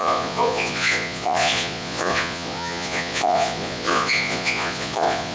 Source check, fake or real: fake